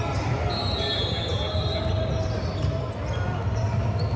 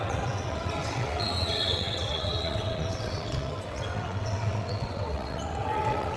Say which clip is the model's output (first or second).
second